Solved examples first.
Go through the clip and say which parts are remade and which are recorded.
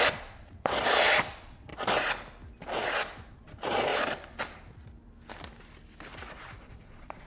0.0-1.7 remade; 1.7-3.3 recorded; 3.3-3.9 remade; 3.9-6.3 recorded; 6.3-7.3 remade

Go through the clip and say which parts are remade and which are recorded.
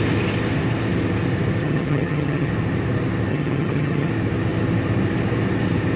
0.0-1.6 recorded; 1.6-2.5 remade; 2.5-3.3 recorded; 3.3-4.1 remade; 4.1-6.0 recorded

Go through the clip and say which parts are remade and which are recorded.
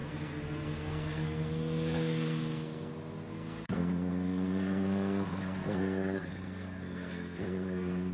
0.0-2.9 remade; 2.9-3.3 recorded; 3.3-8.1 remade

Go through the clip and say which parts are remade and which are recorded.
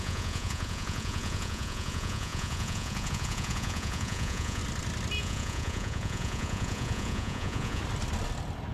0.0-4.6 remade; 4.6-5.2 recorded; 5.2-7.8 remade; 7.8-8.7 recorded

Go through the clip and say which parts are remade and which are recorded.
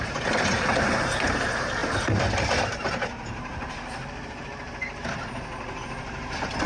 0.0-6.7 remade